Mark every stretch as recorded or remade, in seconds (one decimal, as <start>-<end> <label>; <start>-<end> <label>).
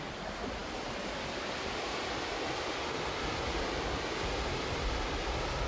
0.0-5.7 recorded